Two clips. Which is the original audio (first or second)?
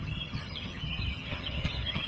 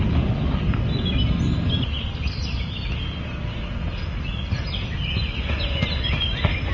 second